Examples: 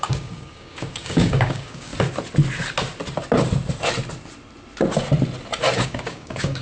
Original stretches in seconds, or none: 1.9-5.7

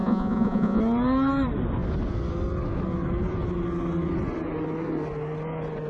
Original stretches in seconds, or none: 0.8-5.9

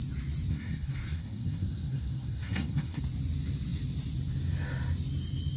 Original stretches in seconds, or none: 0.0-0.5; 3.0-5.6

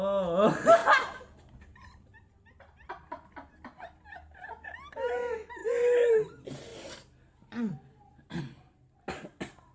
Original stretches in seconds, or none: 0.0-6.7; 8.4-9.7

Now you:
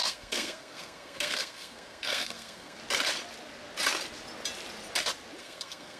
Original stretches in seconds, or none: 2.8-5.4